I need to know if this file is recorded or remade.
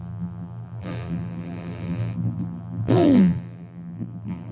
remade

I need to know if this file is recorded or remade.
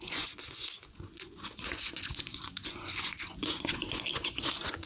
remade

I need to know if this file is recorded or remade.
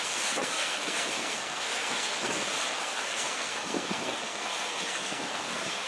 remade